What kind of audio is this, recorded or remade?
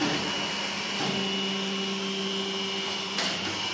recorded